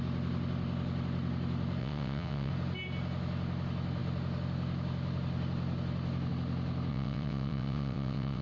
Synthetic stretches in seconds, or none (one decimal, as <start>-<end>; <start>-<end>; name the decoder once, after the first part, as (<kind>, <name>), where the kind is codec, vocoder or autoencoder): 1.8-2.5 (vocoder, WaveNeXt); 6.9-8.4